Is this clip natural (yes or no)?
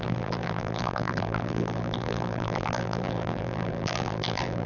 no